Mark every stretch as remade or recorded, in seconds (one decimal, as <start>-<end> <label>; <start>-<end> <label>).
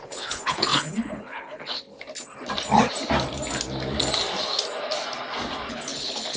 0.0-1.9 remade; 1.9-5.7 recorded; 5.7-6.4 remade